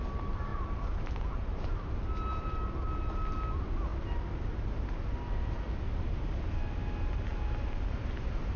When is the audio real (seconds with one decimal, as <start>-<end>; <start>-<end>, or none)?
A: 0.0-8.6

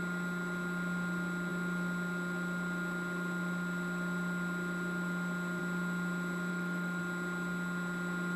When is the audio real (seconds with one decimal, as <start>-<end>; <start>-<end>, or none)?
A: 0.0-6.5; 7.0-8.4

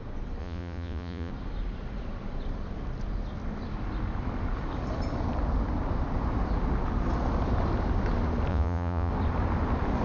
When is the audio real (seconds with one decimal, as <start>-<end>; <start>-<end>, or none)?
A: 0.0-0.4; 1.3-8.5; 9.1-10.0

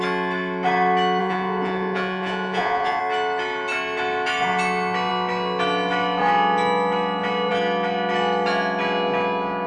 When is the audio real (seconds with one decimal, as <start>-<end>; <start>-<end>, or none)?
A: 0.0-1.2; 3.0-9.7